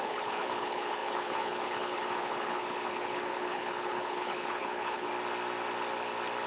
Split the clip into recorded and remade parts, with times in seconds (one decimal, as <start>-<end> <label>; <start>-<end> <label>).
0.0-5.1 remade; 5.1-6.5 recorded

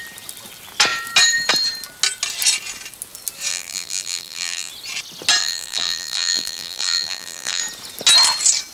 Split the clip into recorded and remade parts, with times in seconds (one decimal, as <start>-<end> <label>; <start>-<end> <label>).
0.0-3.5 recorded; 3.5-4.7 remade; 4.7-5.4 recorded; 5.4-7.6 remade; 7.6-8.7 recorded

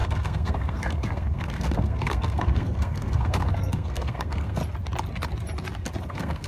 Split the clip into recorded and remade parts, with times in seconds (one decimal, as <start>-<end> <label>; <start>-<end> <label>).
0.0-4.6 remade; 4.6-6.0 recorded; 6.0-6.5 remade

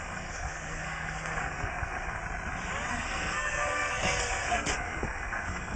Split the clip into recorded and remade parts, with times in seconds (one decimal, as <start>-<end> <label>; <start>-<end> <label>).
0.0-2.2 remade; 2.2-2.9 recorded; 2.9-5.8 remade

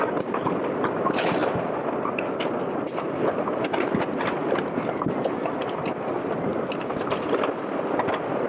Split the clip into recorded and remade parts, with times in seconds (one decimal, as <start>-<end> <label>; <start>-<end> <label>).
0.0-8.5 recorded

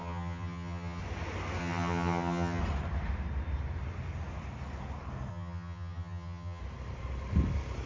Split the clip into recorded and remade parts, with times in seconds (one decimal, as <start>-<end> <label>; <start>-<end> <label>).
0.0-1.0 remade; 1.0-1.6 recorded; 1.6-2.6 remade; 2.6-5.3 recorded; 5.3-6.6 remade; 6.6-7.9 recorded

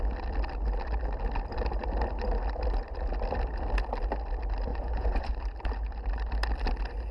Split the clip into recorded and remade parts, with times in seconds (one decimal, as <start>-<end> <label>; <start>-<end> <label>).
0.0-4.7 recorded; 4.7-5.4 remade; 5.4-7.1 recorded